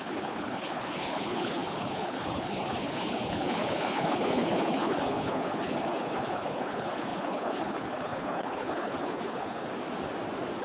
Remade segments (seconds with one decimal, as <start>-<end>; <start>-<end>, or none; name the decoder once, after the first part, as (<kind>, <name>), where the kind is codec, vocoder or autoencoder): 0.0-9.7 (codec, HILCodec)